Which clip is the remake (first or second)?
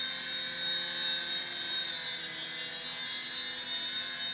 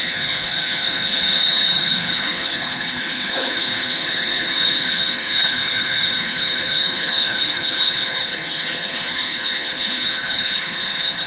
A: second